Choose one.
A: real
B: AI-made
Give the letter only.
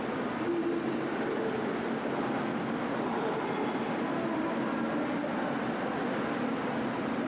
A